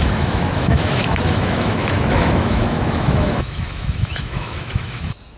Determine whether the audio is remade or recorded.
remade